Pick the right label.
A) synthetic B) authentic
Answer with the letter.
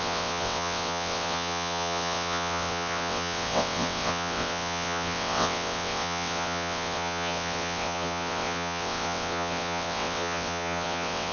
A